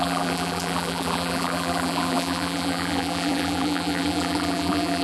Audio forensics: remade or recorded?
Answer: remade